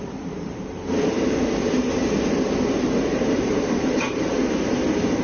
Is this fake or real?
fake